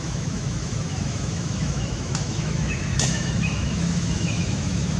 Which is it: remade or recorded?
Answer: remade